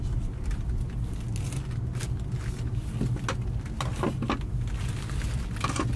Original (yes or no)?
yes